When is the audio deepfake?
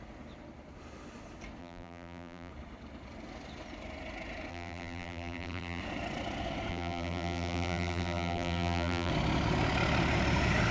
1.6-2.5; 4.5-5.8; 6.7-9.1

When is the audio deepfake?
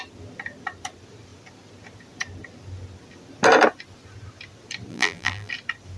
4.9-5.5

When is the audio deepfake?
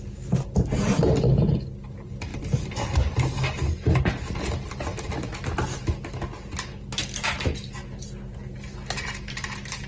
2.3-4.0; 4.9-5.4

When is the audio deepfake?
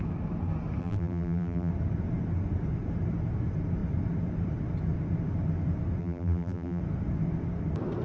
0.8-1.7; 6.0-6.8